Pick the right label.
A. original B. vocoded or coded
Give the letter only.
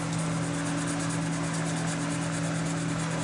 A